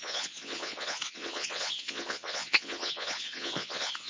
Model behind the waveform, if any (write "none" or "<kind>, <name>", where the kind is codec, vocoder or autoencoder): vocoder, Vocos